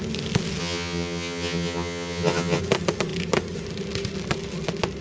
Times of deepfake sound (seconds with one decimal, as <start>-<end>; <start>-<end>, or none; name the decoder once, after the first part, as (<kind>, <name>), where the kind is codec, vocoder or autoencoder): 0.6-2.6 (vocoder, HiFi-GAN)